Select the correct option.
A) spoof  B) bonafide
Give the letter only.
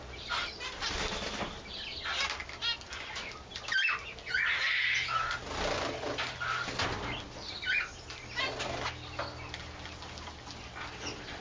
B